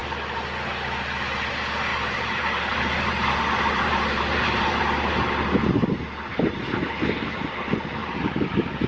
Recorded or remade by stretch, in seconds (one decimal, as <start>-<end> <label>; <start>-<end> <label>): 0.0-1.9 recorded; 1.9-4.8 remade; 4.8-8.0 recorded; 8.0-8.9 remade